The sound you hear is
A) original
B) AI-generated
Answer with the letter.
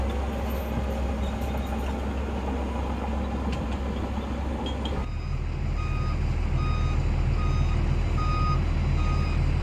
A